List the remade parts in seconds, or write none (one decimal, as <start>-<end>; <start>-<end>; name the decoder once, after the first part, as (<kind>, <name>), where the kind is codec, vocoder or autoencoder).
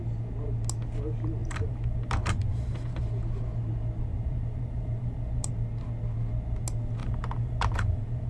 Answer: 1.4-3.0 (vocoder, BigVGAN v2); 4.1-5.5; 7.0-8.3